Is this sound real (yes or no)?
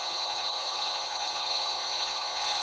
no